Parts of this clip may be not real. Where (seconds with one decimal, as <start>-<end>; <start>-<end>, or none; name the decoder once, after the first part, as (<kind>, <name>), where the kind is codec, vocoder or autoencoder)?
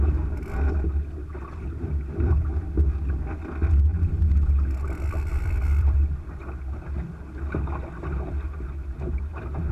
5.3-6.0 (vocoder, BigVGAN v2)